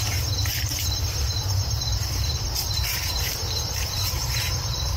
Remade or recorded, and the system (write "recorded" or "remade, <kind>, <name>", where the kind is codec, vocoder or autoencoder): remade, vocoder, BigVGAN v2